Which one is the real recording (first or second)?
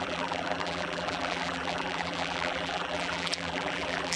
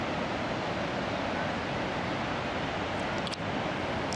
second